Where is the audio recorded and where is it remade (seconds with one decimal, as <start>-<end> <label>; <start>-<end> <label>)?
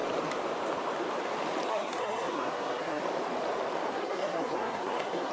0.0-1.7 recorded; 1.7-3.0 remade; 3.0-3.9 recorded; 3.9-5.3 remade